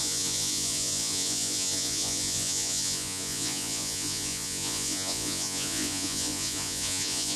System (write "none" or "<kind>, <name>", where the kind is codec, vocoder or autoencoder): vocoder, Vocos